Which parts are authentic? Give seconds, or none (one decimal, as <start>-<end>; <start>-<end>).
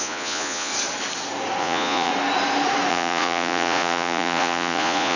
0.7-1.6; 2.1-2.9